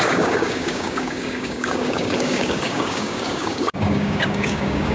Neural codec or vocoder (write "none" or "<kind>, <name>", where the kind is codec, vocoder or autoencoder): codec, DAC